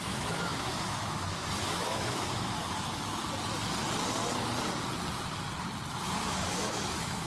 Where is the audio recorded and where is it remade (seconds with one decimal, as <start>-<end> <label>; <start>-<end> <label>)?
0.0-3.2 remade; 3.2-5.9 recorded; 5.9-7.3 remade